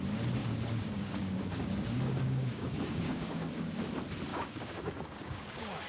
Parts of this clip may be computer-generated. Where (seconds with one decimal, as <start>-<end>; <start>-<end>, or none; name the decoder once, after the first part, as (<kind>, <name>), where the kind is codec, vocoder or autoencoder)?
0.4-3.9 (codec, DAC); 4.3-5.9